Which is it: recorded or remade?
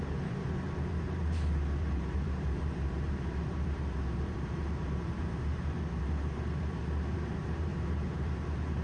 remade